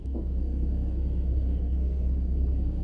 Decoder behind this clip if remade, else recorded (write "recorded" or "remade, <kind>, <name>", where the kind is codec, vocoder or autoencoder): remade, codec, SNAC